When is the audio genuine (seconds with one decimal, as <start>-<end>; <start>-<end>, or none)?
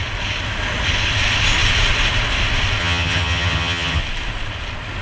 0.0-2.8; 4.0-5.0